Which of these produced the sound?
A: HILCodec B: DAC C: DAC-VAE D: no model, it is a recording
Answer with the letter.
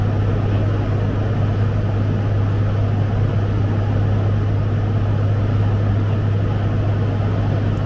D